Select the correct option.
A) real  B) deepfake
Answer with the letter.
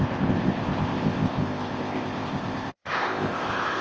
B